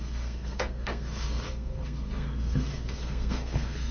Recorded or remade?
remade